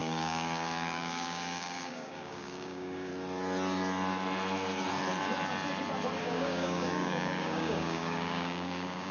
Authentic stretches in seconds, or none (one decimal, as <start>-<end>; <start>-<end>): 3.1-6.2

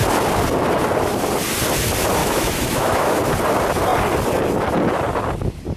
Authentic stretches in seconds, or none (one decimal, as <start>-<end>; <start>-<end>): 0.0-2.2; 3.2-5.8